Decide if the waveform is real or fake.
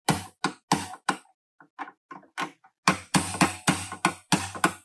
real